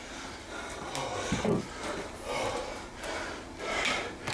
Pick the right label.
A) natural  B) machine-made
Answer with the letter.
A